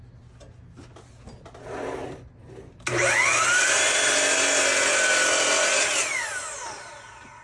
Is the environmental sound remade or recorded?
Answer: recorded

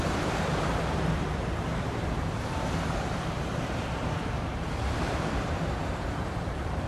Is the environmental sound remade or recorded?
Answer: remade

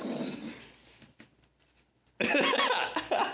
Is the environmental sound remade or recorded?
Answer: recorded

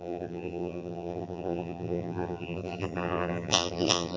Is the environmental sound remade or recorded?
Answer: remade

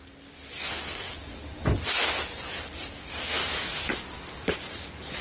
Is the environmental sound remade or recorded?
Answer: recorded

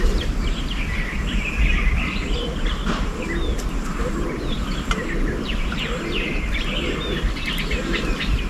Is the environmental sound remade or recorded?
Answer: remade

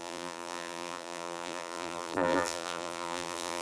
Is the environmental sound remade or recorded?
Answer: remade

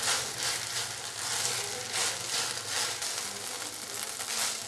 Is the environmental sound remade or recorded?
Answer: recorded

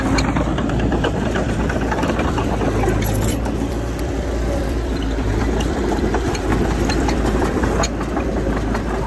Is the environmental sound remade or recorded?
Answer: remade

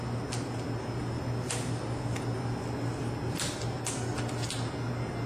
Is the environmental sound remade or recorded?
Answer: recorded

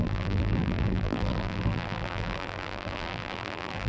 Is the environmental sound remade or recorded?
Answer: remade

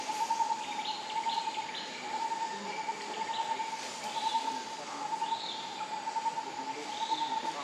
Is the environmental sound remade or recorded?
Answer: recorded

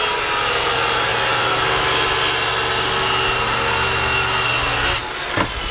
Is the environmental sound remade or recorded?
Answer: recorded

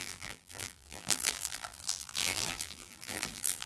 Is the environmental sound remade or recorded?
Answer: remade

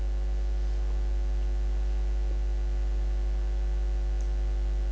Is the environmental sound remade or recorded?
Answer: recorded